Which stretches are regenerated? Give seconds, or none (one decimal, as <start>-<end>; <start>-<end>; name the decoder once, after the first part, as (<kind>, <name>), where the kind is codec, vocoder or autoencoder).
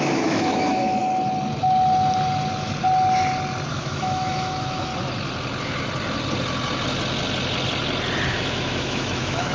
0.0-1.0 (autoencoder, DAC-VAE); 3.7-4.9; 8.3-9.5